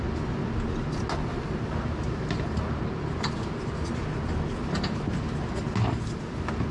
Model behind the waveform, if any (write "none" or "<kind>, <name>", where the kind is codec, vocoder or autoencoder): none